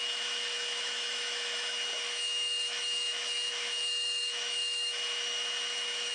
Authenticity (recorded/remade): remade